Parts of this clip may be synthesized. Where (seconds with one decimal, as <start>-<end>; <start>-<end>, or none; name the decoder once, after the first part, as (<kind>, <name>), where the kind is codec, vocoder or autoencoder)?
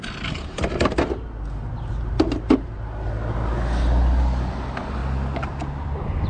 5.0-6.3 (vocoder, BigVGAN v2)